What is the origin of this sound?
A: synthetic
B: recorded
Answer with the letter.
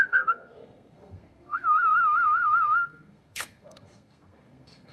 A